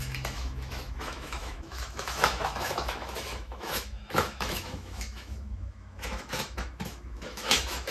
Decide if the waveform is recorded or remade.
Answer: remade